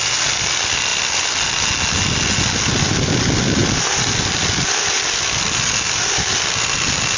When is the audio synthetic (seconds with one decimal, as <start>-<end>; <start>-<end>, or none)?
none